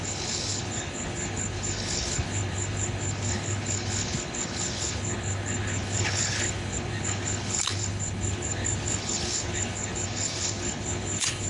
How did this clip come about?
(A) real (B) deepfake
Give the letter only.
B